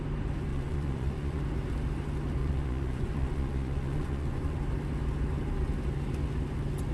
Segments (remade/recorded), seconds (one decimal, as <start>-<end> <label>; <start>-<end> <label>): 0.0-0.5 recorded; 0.5-1.4 remade; 1.4-2.4 recorded; 2.4-4.6 remade; 4.6-6.9 recorded